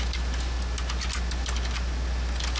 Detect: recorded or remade recorded